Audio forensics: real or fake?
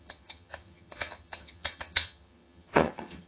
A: fake